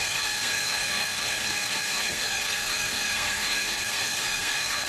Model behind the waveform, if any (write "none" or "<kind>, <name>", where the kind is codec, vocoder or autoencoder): codec, SNAC